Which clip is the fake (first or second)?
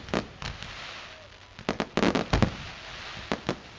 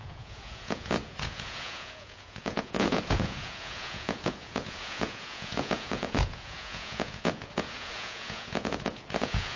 second